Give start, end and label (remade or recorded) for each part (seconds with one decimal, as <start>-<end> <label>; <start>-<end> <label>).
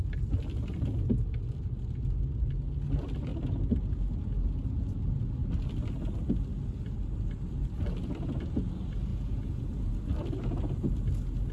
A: 0.0-9.1 recorded; 9.1-9.9 remade; 9.9-11.5 recorded